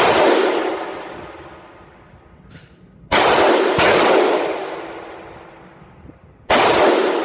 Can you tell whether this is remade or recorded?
recorded